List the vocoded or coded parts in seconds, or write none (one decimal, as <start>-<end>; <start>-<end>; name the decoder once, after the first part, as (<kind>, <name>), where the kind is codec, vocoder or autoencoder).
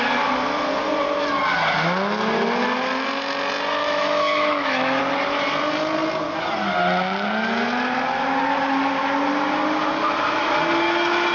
3.8-5.0 (autoencoder, DAC-VAE)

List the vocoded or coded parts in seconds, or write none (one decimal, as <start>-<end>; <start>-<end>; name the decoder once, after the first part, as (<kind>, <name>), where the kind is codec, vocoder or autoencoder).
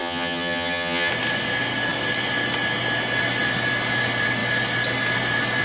0.0-1.1 (vocoder, HiFi-GAN)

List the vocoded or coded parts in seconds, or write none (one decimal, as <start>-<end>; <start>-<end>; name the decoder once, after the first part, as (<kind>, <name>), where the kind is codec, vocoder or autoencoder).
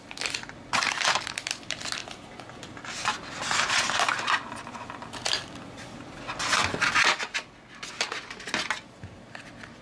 none